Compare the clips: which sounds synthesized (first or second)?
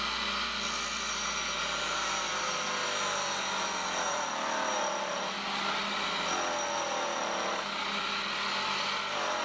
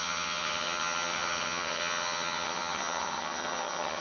second